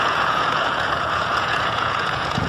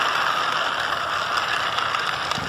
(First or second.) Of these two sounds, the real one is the second